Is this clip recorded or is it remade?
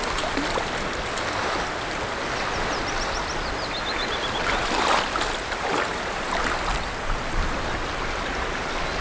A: recorded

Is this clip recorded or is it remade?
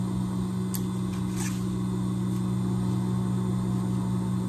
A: recorded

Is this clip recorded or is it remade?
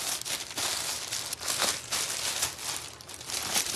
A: recorded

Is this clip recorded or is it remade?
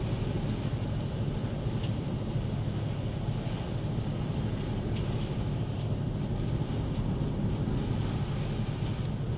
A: recorded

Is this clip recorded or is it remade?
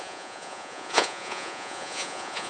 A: remade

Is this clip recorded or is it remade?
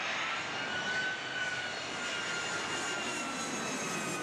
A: recorded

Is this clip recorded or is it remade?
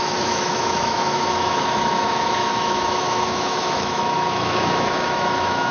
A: remade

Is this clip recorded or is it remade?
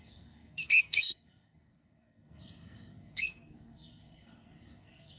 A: remade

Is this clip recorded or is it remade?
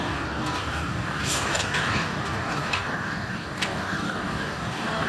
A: remade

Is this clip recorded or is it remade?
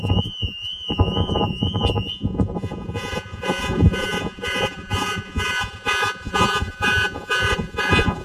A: remade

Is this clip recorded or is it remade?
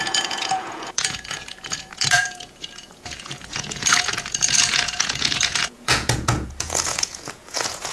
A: remade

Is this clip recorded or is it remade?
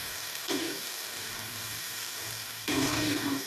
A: remade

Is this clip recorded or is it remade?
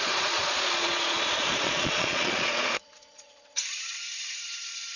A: remade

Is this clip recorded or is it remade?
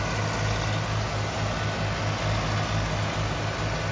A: recorded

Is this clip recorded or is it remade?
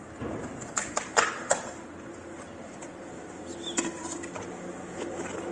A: recorded